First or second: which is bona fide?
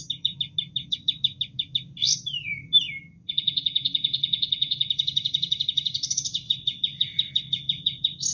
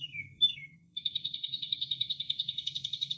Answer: first